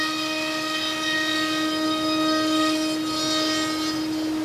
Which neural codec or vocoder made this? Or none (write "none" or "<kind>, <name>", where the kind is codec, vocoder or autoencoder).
none